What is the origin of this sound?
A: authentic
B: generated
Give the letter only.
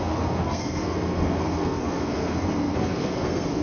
B